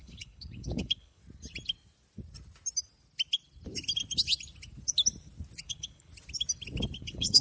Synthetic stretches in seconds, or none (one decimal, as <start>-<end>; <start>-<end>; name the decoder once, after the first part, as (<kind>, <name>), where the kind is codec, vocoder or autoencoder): 0.0-1.2 (codec, HILCodec); 5.6-6.1; 7.0-7.4